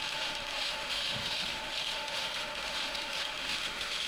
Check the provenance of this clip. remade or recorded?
remade